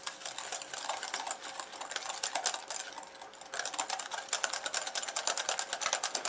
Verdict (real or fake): real